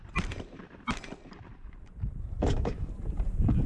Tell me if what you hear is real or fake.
fake